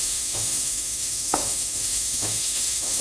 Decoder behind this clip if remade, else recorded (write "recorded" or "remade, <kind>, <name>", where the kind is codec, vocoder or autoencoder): remade, autoencoder, DAC-VAE